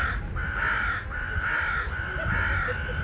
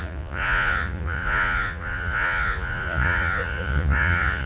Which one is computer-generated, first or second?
second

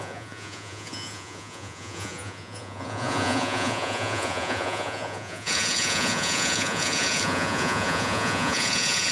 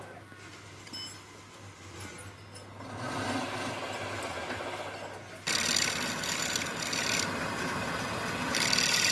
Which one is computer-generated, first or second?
first